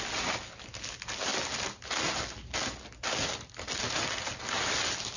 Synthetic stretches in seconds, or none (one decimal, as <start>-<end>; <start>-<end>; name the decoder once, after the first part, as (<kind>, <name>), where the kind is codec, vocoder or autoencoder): none